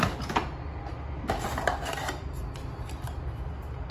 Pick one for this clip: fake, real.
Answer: real